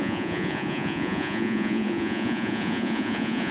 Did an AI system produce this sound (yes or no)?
yes